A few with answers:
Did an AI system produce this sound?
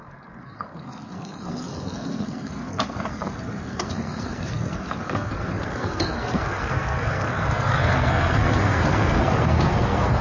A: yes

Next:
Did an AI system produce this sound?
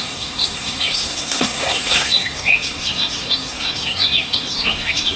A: yes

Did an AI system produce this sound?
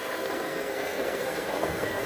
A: yes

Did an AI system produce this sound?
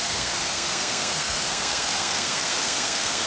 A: yes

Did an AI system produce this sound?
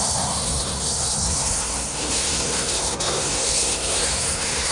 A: yes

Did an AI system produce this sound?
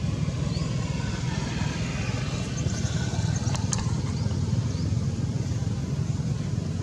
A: no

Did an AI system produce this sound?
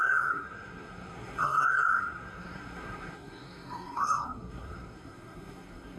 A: yes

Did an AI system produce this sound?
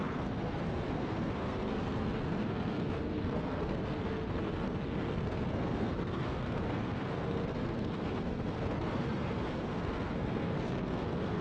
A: yes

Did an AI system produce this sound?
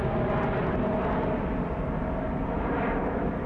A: no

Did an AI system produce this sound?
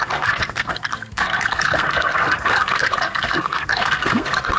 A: yes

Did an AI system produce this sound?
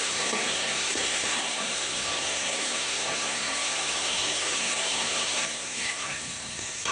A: yes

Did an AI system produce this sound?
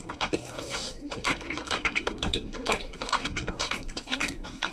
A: yes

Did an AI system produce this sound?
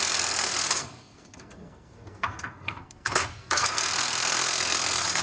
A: yes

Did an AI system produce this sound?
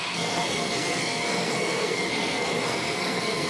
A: yes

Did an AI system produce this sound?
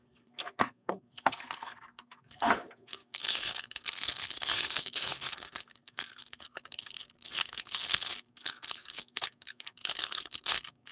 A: yes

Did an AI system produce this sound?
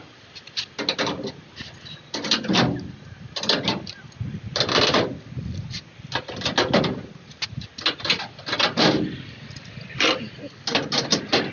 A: no